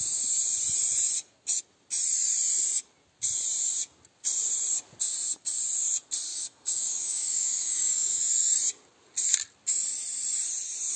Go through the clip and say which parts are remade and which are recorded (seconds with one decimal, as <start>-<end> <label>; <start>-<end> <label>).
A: 0.0-6.3 recorded; 6.3-8.2 remade; 8.2-11.0 recorded

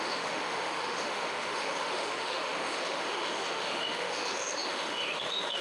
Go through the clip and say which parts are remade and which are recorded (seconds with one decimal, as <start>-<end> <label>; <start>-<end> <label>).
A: 0.0-5.6 remade

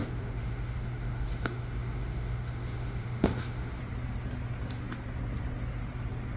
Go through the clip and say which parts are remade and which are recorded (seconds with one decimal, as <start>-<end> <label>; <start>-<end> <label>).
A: 0.0-3.8 remade; 3.8-6.4 recorded

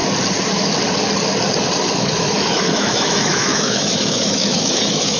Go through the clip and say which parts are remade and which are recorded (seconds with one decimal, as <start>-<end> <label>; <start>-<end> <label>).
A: 0.0-1.9 recorded; 1.9-5.2 remade

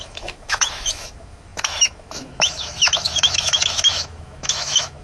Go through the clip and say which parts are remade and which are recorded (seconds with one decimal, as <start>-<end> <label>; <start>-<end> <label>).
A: 0.0-5.0 remade